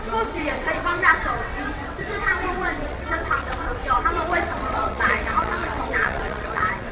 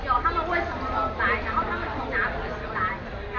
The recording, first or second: second